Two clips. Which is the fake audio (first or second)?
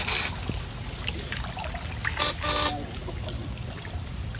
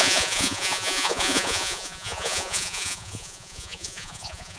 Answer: second